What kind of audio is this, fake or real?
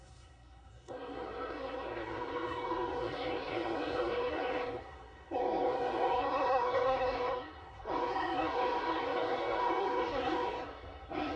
fake